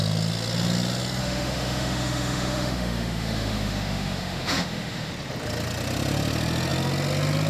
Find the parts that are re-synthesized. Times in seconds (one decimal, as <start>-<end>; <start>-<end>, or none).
1.2-5.1

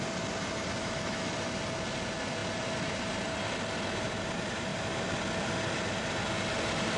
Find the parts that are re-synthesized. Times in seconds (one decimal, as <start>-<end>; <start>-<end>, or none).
0.8-1.3

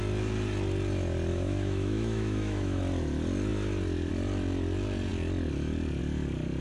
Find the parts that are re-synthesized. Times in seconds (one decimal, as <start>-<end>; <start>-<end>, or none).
1.3-2.8

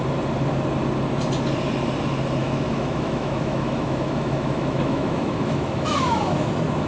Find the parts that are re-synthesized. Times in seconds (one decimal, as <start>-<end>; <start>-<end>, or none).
2.4-6.5